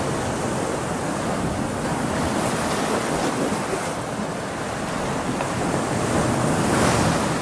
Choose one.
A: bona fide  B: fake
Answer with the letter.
A